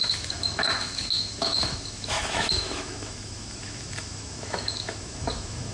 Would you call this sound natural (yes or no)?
no